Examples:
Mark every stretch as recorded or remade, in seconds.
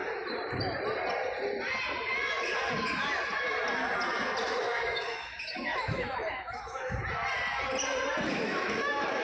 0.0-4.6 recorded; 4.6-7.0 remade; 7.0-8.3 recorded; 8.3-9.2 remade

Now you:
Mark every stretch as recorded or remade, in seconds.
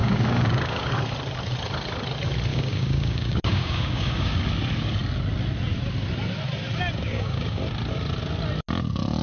0.0-0.9 remade; 0.9-2.5 recorded; 2.5-4.5 remade; 4.5-7.0 recorded; 7.0-7.6 remade; 7.6-9.2 recorded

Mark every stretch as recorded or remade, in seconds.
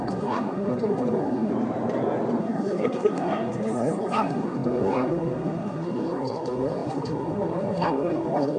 0.0-1.5 remade; 1.5-2.4 recorded; 2.4-8.6 remade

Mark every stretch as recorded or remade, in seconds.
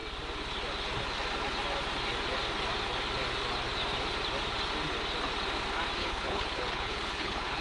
0.0-6.0 recorded; 6.0-7.6 remade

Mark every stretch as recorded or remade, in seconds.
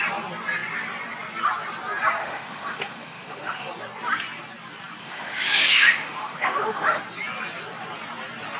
0.0-2.2 recorded; 2.2-3.7 remade; 3.7-5.0 recorded; 5.0-7.0 remade; 7.0-8.6 recorded